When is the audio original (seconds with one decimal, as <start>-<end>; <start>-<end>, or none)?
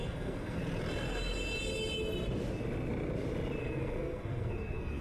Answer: 0.6-3.6